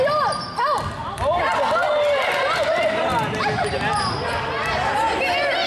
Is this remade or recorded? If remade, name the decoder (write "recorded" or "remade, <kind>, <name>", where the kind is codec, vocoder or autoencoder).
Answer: recorded